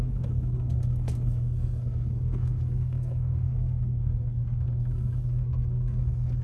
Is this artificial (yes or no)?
yes